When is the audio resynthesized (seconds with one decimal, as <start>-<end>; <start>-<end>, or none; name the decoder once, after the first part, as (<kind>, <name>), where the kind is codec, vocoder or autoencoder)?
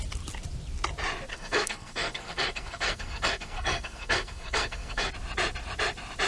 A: 1.3-5.1 (codec, SNAC)